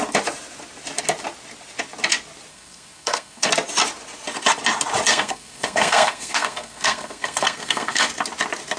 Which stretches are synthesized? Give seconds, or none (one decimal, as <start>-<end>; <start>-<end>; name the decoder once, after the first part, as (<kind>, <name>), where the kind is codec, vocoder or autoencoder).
2.5-3.5 (codec, SNAC); 5.1-8.1